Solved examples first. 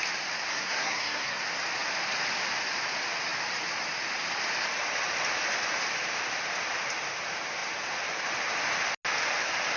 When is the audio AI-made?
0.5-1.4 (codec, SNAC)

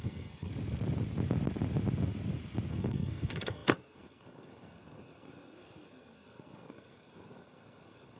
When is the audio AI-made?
0.0-0.5 (codec, SNAC); 2.7-8.2

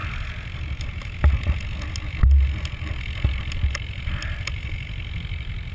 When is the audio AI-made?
none

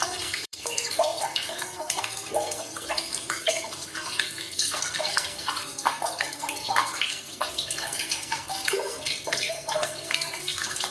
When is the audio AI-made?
0.0-10.9 (codec, SNAC)

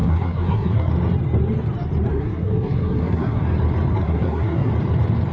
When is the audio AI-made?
0.0-0.9 (codec, SNAC); 2.1-3.4; 3.9-4.7